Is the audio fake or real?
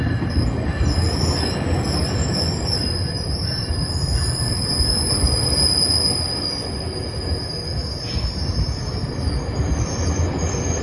real